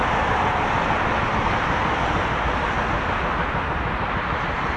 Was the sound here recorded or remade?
recorded